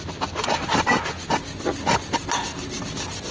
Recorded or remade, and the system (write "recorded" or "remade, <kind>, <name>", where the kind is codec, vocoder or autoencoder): recorded